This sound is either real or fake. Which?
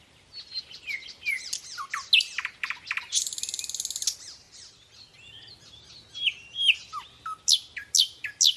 real